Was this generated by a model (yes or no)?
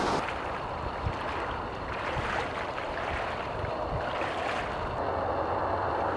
no